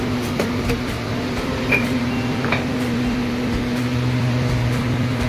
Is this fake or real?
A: fake